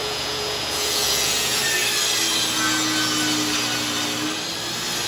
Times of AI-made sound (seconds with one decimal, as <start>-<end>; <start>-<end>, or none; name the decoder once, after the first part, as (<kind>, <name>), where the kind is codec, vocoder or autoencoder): 0.0-1.6 (vocoder, Vocos)